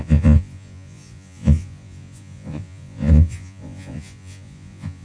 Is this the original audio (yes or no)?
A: no